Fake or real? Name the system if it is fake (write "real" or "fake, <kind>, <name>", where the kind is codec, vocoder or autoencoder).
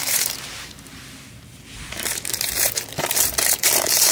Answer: fake, vocoder, BigVGAN v2